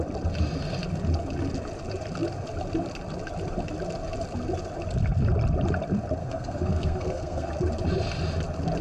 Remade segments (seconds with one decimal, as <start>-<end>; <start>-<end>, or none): 6.2-7.5